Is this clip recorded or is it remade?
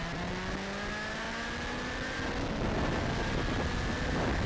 recorded